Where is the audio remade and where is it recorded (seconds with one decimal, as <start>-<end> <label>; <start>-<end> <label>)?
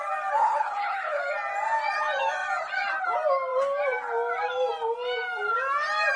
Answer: 0.0-0.4 recorded; 0.4-1.2 remade; 1.2-6.2 recorded